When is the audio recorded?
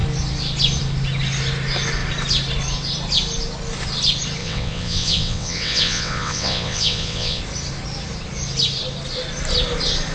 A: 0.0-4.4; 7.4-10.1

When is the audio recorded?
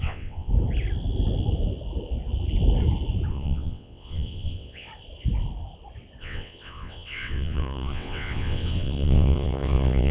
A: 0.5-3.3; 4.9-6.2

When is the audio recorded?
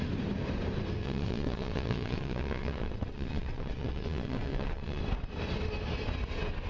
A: 0.0-1.0; 5.0-6.7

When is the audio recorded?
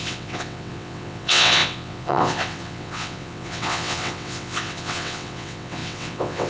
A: none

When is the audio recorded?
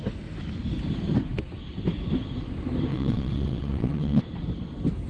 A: 0.0-2.9; 4.2-5.1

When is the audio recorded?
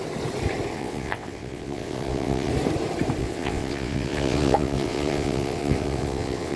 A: 0.0-0.7; 2.5-3.2